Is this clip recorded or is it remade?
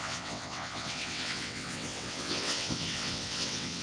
remade